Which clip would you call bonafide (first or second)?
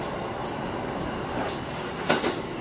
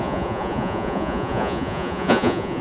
first